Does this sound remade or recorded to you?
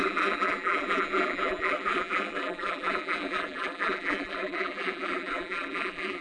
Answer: remade